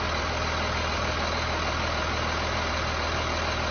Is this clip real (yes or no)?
yes